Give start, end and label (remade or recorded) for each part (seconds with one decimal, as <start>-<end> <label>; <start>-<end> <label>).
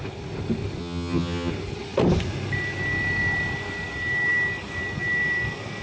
0.0-0.8 recorded; 0.8-1.5 remade; 1.5-5.8 recorded